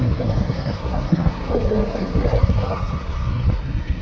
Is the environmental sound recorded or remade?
remade